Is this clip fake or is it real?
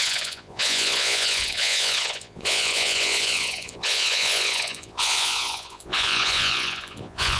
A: fake